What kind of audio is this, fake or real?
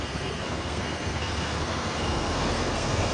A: fake